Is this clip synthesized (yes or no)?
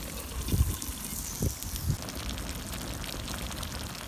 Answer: no